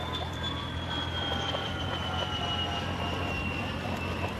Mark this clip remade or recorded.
remade